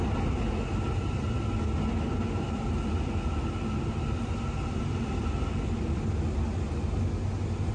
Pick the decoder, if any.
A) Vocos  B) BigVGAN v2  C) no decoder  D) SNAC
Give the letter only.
C